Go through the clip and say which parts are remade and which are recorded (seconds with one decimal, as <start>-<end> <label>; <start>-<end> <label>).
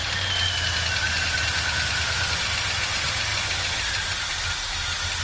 0.0-5.2 recorded